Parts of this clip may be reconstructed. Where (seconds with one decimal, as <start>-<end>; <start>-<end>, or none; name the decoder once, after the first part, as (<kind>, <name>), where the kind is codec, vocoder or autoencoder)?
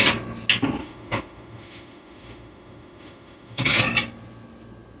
0.8-3.8 (autoencoder, DAC-VAE)